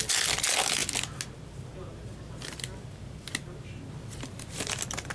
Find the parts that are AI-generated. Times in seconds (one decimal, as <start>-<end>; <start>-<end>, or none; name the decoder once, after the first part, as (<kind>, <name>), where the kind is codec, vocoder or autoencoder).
none